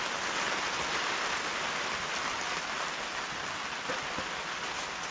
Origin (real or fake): real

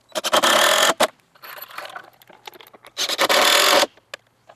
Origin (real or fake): real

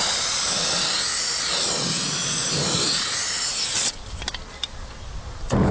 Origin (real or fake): real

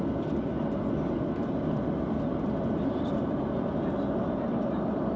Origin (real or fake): real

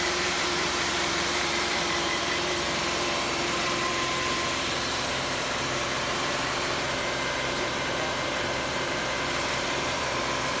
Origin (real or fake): fake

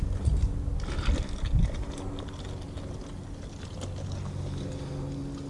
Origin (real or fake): real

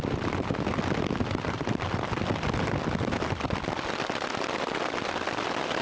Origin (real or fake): fake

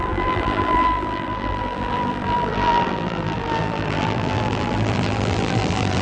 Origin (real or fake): fake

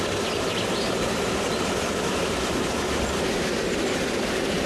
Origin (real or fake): real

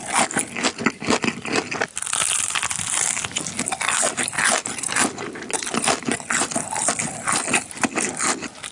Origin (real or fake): real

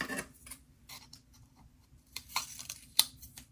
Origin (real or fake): fake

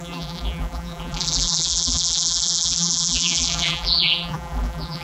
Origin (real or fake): fake